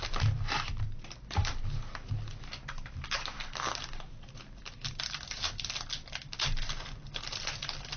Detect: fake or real real